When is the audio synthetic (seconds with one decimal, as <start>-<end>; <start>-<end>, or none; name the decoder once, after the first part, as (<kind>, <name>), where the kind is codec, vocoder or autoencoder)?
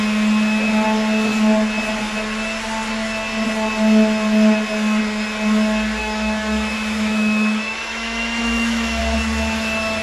6.0-9.0 (autoencoder, DAC-VAE)